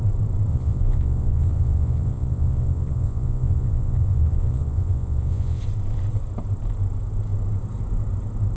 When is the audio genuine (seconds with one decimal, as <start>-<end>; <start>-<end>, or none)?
0.0-0.5; 5.6-8.6